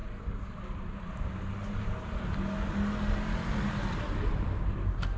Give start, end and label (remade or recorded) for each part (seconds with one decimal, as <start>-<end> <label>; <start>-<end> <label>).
0.0-5.2 recorded